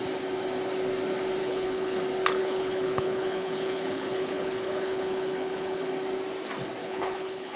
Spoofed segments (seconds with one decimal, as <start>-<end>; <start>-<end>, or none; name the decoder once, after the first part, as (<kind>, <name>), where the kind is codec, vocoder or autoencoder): 1.4-2.0 (codec, HILCodec); 2.4-5.9; 6.8-7.6